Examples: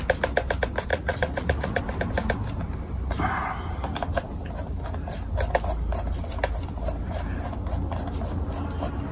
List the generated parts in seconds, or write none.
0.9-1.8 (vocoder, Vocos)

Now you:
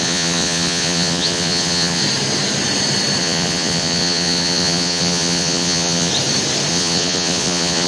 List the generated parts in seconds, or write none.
0.0-2.0 (vocoder, Vocos); 3.2-6.1; 6.7-7.9

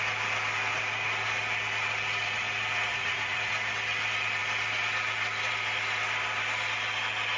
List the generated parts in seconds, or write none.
2.9-3.5 (vocoder, Vocos)

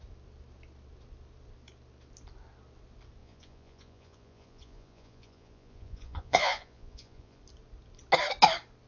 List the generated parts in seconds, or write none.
3.2-7.4 (vocoder, Vocos)

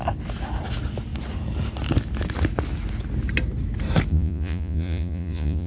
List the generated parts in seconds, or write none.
4.1-5.7 (vocoder, Vocos)

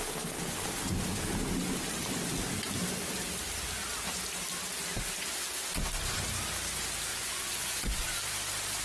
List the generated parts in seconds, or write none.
7.1-8.2 (vocoder, Vocos)

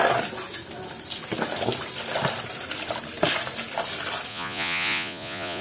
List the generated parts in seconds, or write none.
4.3-5.6 (vocoder, Vocos)